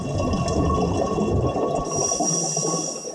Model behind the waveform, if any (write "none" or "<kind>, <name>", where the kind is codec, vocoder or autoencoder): none